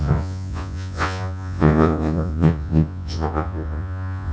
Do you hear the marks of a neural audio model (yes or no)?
yes